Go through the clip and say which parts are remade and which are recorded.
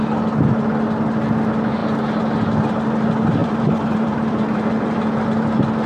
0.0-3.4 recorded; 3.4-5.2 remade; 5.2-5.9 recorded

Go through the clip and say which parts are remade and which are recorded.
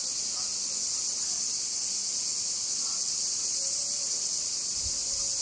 0.0-5.4 recorded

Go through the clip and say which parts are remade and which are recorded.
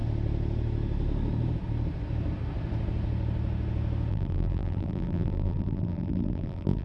0.0-4.1 recorded; 4.1-6.8 remade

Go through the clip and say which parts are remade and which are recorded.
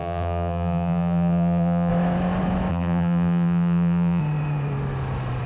0.0-1.9 remade; 1.9-2.7 recorded; 2.7-4.2 remade; 4.2-5.5 recorded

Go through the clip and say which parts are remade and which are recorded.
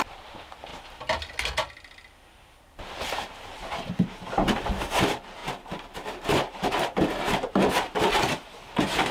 0.0-0.7 remade; 0.7-2.6 recorded; 2.6-9.1 remade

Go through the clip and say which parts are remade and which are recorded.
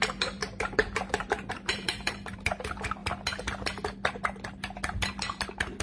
0.0-0.4 recorded; 0.4-2.5 remade; 2.5-5.8 recorded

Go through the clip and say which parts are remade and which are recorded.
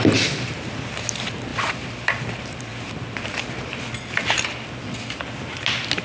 0.0-1.5 recorded; 1.5-2.2 remade; 2.2-2.7 recorded; 2.7-3.8 remade; 3.8-6.0 recorded